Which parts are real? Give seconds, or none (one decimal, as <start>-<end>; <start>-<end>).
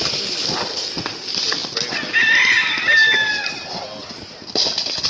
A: 0.0-5.1